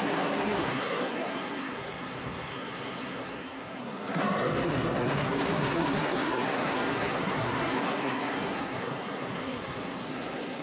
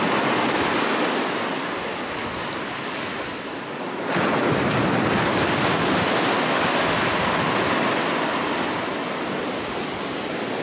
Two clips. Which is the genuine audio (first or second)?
second